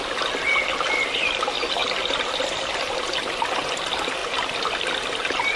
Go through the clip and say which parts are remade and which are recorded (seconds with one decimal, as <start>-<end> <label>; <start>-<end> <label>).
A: 0.0-5.6 recorded